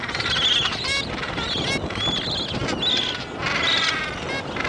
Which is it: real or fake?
real